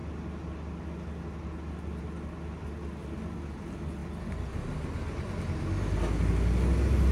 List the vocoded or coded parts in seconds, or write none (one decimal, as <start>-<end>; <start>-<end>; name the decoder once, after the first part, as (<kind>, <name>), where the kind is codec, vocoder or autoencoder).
none

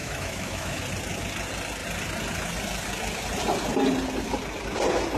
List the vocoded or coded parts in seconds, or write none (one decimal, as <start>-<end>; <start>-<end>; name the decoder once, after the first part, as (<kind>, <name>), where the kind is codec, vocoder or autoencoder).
0.0-0.8 (autoencoder, DAC-VAE)

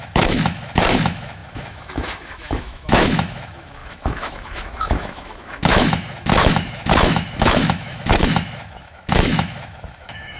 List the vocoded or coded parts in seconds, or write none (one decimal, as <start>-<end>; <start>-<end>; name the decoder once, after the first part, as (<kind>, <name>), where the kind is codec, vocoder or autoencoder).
0.0-10.4 (autoencoder, DAC-VAE)

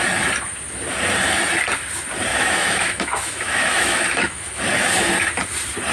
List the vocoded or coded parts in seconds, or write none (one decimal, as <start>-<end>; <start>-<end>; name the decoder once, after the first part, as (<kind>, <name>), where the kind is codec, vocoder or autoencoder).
2.3-4.6 (autoencoder, DAC-VAE)

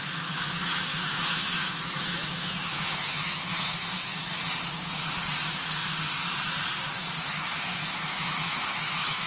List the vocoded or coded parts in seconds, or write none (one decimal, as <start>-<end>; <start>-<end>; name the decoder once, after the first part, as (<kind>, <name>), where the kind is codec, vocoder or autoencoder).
0.0-4.4 (autoencoder, DAC-VAE); 7.2-9.3

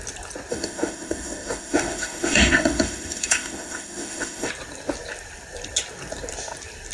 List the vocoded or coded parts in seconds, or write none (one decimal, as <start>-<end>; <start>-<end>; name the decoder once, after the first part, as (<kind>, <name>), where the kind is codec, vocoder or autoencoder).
0.5-4.5 (autoencoder, DAC-VAE)